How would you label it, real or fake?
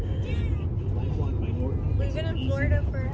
real